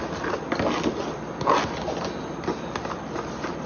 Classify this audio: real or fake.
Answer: real